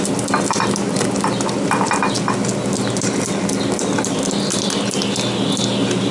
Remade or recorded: recorded